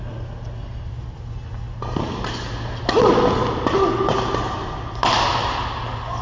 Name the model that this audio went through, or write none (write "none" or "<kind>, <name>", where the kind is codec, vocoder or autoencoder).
none